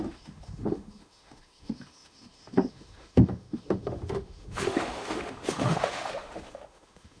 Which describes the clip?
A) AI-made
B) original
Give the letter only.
A